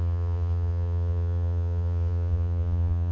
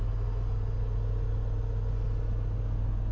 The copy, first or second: first